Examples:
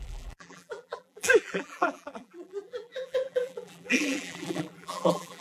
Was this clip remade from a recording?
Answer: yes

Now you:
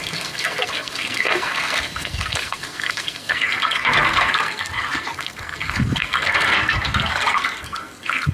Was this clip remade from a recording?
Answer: yes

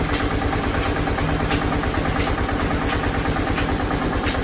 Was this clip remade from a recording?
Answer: no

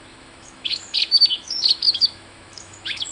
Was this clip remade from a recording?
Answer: yes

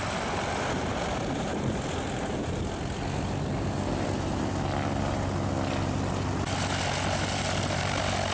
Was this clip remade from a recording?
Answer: no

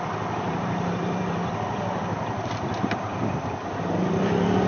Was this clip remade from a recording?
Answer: yes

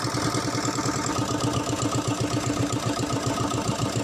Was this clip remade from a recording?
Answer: no